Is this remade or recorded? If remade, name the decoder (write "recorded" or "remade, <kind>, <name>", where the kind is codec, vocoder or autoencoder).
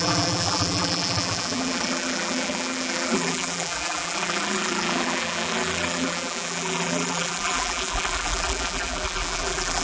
remade, vocoder, BigVGAN v2